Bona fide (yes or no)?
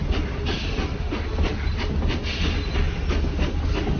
yes